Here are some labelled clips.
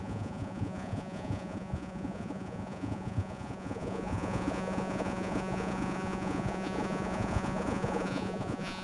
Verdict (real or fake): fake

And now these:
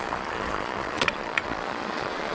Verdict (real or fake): fake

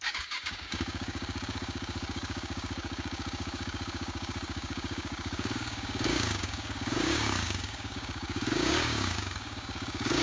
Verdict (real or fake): fake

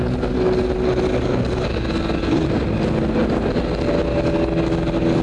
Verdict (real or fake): real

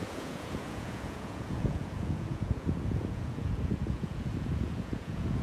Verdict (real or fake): fake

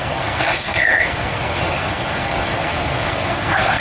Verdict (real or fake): fake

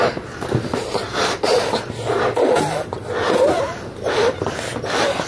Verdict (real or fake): real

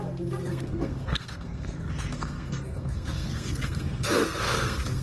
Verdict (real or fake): fake